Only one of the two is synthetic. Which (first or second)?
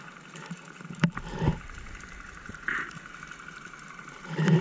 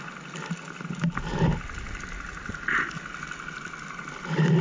first